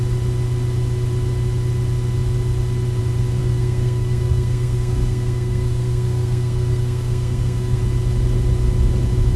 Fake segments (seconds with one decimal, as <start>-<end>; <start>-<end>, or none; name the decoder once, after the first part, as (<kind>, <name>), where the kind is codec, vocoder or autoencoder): 3.4-7.8 (codec, SNAC)